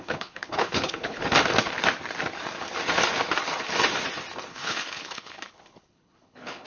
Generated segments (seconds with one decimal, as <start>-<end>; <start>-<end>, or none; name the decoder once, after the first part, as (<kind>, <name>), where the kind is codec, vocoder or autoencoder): 0.0-1.2 (codec, HILCodec); 4.5-6.7